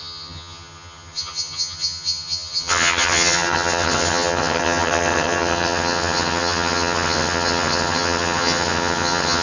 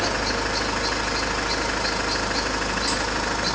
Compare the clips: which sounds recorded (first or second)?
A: second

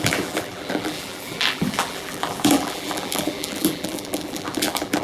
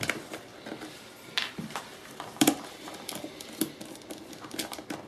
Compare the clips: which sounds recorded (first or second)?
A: second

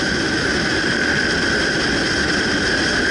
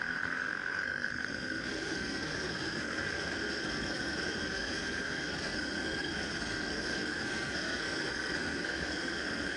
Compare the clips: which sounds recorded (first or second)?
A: first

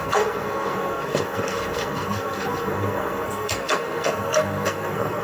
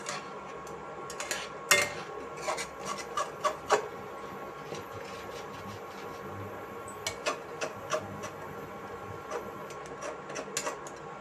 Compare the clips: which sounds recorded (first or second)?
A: second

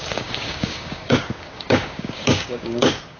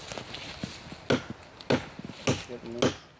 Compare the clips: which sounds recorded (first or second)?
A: second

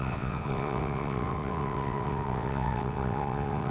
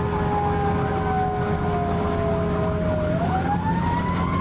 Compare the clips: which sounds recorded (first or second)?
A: second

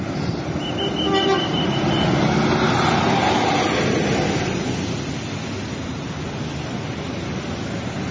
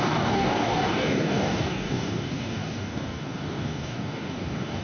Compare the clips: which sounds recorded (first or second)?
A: first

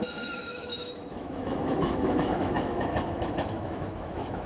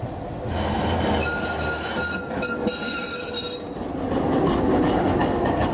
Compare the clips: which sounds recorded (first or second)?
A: second